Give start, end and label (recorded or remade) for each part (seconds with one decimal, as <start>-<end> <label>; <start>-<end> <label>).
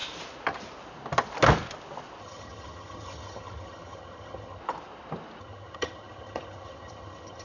0.0-2.2 recorded; 2.2-4.6 remade; 4.6-5.4 recorded; 5.4-7.4 remade